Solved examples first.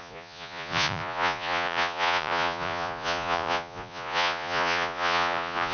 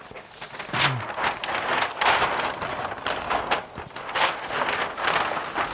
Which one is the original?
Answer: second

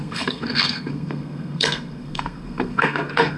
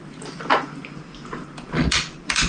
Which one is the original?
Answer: second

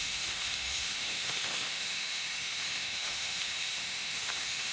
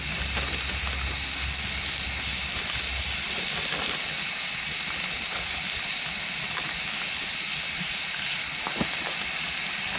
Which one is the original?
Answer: second